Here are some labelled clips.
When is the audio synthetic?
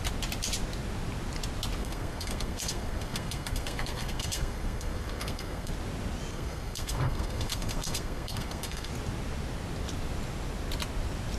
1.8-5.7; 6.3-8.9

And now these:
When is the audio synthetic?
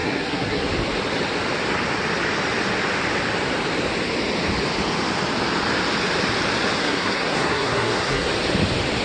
0.0-0.7; 6.8-8.3